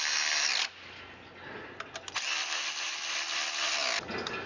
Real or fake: real